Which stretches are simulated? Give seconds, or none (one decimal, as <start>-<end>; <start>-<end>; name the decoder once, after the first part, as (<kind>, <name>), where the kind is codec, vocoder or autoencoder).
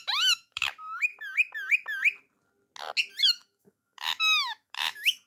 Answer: 0.0-1.1 (autoencoder, DAC-VAE); 3.2-5.3